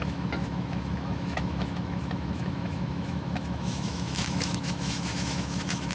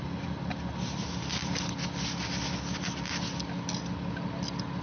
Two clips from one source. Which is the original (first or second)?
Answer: second